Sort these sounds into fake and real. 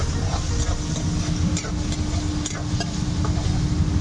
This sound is real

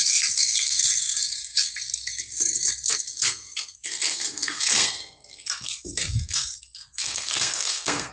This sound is fake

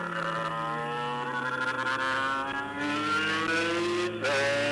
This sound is real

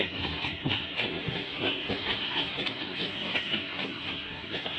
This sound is fake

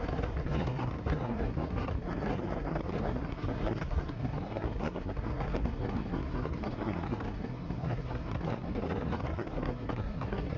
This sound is fake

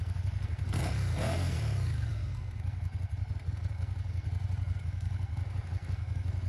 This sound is fake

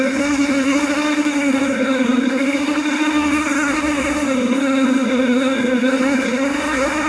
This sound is fake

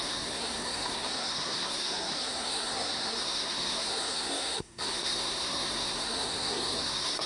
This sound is fake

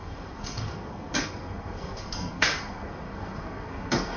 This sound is fake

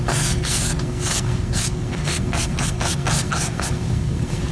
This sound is fake